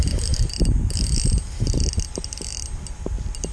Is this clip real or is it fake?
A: real